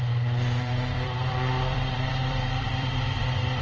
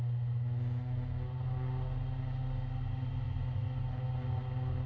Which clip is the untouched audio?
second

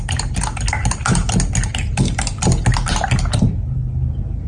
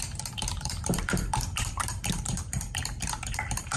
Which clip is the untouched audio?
first